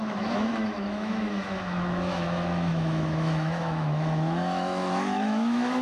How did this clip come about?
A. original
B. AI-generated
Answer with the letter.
B